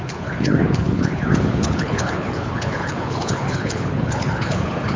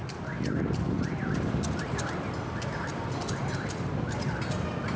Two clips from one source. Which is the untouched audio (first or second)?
second